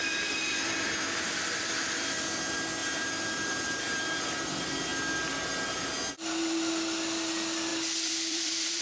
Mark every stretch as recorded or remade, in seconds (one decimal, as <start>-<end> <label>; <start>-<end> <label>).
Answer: 0.0-4.9 remade; 4.9-6.1 recorded; 6.1-8.8 remade